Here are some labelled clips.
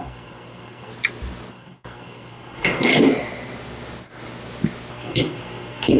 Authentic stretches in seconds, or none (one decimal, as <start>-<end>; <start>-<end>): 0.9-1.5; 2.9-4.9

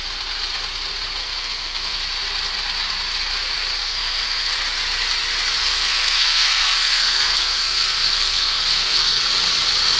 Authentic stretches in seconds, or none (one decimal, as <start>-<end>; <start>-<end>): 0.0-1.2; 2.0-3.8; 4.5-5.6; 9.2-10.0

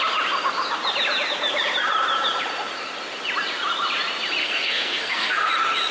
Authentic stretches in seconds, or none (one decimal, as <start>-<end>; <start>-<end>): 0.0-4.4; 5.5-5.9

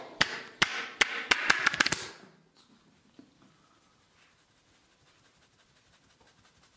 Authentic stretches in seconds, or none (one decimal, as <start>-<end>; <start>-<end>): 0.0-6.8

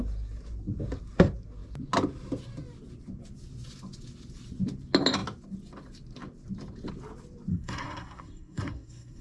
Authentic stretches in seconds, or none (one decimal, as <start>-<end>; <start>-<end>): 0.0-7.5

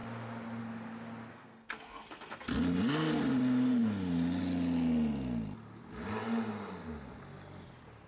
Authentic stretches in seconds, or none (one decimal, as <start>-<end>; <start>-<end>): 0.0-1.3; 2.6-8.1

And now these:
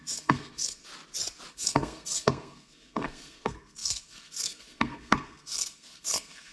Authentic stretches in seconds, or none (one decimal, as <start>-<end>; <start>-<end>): 0.9-1.5